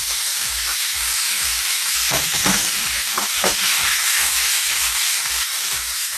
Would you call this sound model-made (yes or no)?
yes